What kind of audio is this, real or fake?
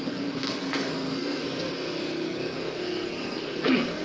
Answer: fake